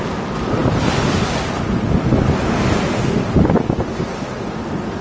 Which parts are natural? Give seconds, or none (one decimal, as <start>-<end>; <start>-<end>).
0.0-5.0